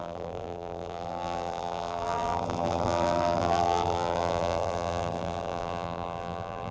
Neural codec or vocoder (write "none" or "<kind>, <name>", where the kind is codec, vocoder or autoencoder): vocoder, BigVGAN v2